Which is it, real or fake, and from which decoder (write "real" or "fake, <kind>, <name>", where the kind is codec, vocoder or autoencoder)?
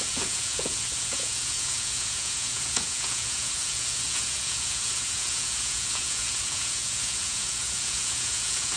fake, vocoder, Vocos